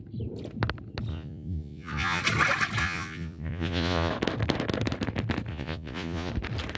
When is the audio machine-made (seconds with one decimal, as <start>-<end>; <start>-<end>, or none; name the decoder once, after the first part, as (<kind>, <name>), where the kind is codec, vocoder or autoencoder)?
1.1-2.2 (vocoder, Vocos); 2.8-4.1; 5.5-6.3